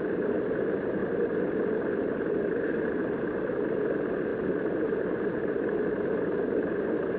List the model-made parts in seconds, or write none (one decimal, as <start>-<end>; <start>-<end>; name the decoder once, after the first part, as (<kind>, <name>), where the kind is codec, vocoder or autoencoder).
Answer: none